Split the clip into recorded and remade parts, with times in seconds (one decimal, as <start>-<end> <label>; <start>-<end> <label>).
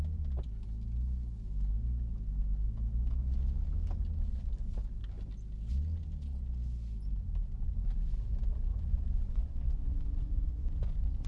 0.0-8.7 recorded; 8.7-11.3 remade